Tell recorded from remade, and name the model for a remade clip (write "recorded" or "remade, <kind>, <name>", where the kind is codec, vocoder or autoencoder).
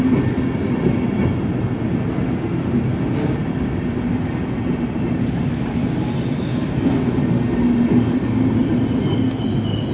recorded